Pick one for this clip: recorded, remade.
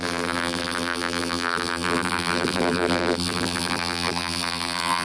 remade